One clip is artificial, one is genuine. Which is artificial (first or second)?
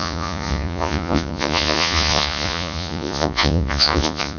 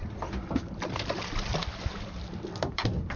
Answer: first